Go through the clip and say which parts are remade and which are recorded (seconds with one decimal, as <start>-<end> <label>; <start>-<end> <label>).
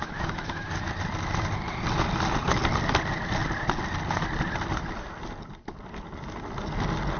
0.0-0.9 remade; 0.9-7.2 recorded